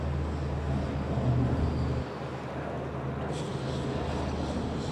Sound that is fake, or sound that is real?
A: real